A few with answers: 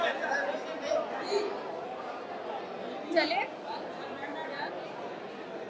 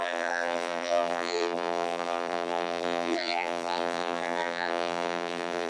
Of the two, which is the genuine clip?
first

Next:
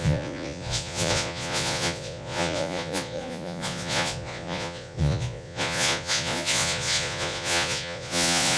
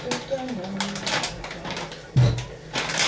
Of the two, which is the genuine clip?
second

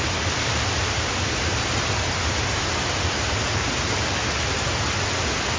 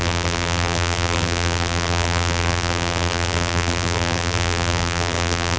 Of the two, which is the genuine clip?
first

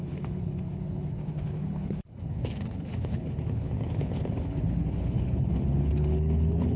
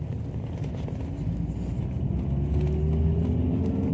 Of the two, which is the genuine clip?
second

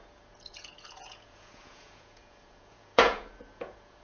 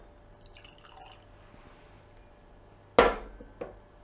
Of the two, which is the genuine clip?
second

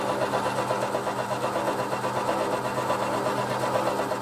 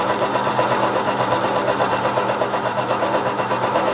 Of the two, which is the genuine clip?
first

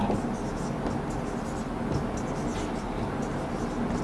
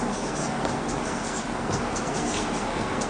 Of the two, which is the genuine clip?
first